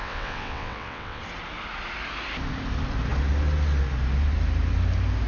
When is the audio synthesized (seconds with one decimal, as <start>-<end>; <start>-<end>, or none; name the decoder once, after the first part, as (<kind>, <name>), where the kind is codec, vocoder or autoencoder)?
0.0-1.2 (vocoder, WaveNeXt)